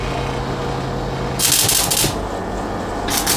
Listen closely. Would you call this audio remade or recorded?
recorded